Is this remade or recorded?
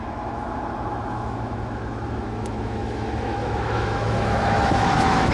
remade